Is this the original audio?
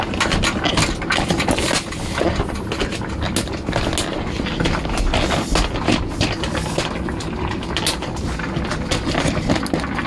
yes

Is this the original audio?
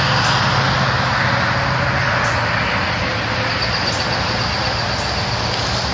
yes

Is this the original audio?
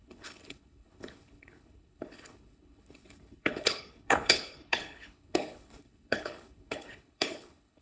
no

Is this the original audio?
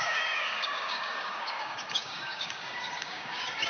no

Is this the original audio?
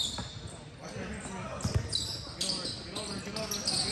yes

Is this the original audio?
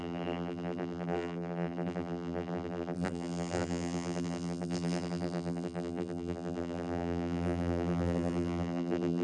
no